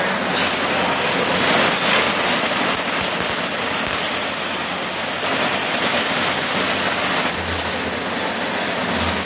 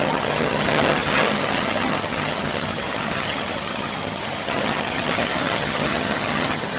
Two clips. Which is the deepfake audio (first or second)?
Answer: second